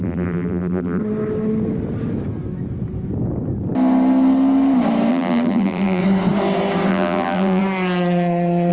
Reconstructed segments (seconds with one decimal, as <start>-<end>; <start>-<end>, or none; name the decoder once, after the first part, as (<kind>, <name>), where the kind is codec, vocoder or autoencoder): 0.0-1.0 (vocoder, BigVGAN v2); 5.1-6.0; 6.9-7.6